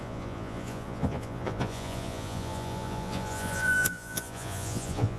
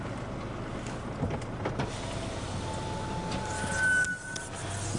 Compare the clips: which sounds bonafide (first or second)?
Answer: second